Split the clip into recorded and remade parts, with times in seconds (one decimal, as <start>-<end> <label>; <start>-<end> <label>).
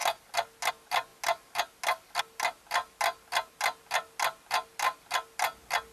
0.0-5.9 recorded